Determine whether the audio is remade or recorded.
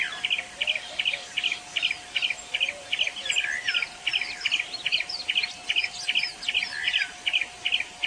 recorded